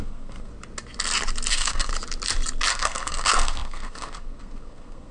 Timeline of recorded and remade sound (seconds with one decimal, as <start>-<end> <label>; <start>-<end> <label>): 0.0-0.5 remade; 0.5-1.5 recorded; 1.5-1.9 remade; 1.9-2.7 recorded; 2.7-5.1 remade

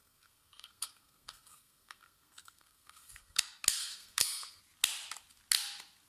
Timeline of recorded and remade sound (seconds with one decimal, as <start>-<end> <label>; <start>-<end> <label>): 0.0-3.4 remade; 3.4-3.8 recorded; 3.8-4.6 remade; 4.6-6.1 recorded

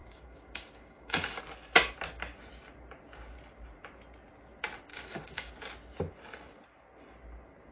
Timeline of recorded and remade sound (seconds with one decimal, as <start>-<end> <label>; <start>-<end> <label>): 0.0-1.4 remade; 1.4-4.9 recorded; 4.9-5.5 remade; 5.5-7.7 recorded

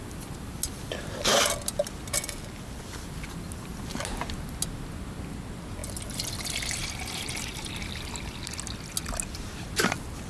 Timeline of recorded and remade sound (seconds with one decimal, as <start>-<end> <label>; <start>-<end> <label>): 0.0-6.8 recorded; 6.8-7.5 remade; 7.5-10.3 recorded

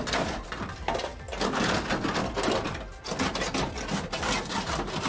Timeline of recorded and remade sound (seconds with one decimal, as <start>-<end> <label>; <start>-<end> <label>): 0.0-5.1 recorded

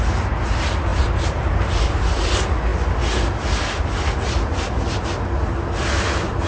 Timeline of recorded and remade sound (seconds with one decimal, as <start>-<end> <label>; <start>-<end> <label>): 0.0-6.5 recorded

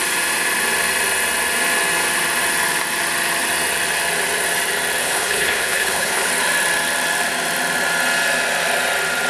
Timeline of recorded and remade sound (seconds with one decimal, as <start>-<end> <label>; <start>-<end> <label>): 0.0-5.0 recorded; 5.0-6.3 remade; 6.3-9.3 recorded

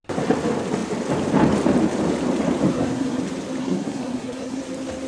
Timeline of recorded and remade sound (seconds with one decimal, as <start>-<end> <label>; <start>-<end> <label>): 0.0-2.7 recorded; 2.7-3.2 remade; 3.2-3.6 recorded; 3.6-4.6 remade; 4.6-5.1 recorded